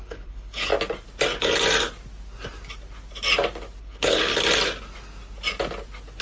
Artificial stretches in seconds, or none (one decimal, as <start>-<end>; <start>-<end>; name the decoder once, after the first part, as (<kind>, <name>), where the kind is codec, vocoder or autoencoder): 0.0-0.7 (codec, HILCodec); 3.8-4.3